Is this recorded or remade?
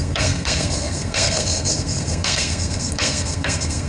remade